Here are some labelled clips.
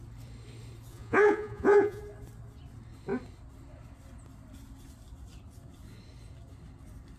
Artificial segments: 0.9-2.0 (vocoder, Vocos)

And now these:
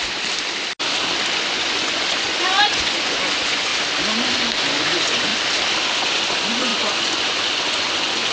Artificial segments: 1.3-3.7 (vocoder, Vocos); 4.3-5.3; 6.0-8.3